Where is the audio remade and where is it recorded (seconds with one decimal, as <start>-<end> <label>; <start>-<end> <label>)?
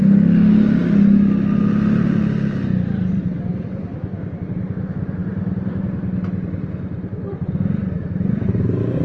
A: 0.0-5.2 recorded; 5.2-5.8 remade; 5.8-9.0 recorded